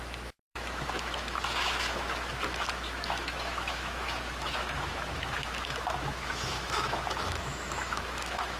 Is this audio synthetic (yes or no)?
yes